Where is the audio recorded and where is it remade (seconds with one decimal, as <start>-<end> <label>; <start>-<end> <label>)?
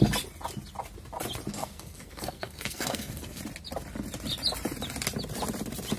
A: 0.0-1.5 recorded; 1.5-3.4 remade; 3.4-6.0 recorded